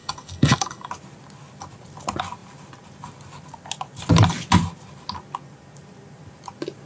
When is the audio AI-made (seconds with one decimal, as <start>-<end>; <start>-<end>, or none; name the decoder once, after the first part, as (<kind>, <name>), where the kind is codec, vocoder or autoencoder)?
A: 0.0-0.9 (codec, DAC)